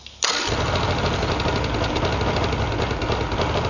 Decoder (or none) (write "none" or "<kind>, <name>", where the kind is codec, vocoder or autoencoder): none